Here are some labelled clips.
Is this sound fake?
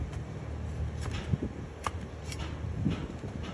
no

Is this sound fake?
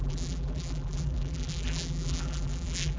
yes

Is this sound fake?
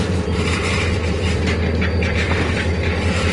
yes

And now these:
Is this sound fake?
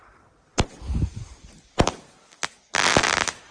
no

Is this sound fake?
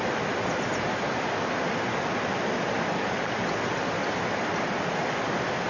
no